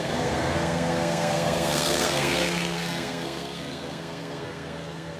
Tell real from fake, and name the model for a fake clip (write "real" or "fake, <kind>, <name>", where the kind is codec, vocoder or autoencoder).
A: fake, codec, SNAC